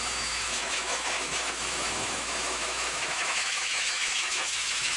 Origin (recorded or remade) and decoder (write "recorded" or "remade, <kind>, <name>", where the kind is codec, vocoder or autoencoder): remade, autoencoder, DAC-VAE